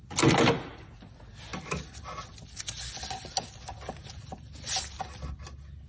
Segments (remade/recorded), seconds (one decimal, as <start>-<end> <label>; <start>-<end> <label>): 0.0-5.9 recorded

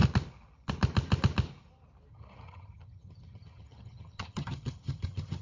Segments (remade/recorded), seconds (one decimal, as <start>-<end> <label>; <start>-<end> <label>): 0.0-2.1 recorded; 2.1-5.4 remade

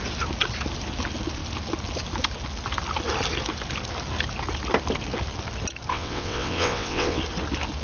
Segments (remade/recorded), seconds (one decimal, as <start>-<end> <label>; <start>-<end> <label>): 0.0-5.9 recorded; 5.9-7.2 remade; 7.2-7.8 recorded

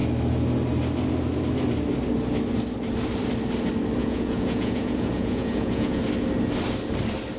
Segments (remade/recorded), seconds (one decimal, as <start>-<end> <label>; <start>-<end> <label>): 0.0-4.0 recorded; 4.0-6.0 remade; 6.0-7.4 recorded

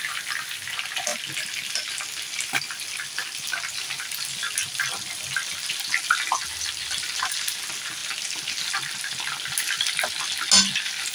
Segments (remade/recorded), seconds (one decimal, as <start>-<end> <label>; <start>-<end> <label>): 0.0-11.1 recorded

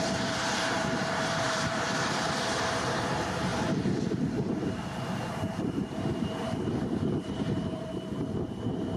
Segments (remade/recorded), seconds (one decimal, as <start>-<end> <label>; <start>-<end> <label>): 0.0-9.0 remade